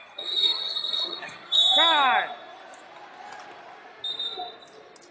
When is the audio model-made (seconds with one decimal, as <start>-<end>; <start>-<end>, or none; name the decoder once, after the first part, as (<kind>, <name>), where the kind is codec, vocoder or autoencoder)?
0.0-1.6 (vocoder, HiFi-GAN)